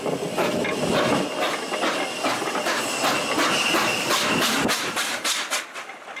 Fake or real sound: real